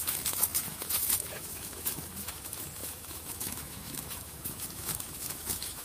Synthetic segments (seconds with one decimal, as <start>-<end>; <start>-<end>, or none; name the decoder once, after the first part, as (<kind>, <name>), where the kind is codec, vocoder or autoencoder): 0.0-5.8 (autoencoder, DAC-VAE)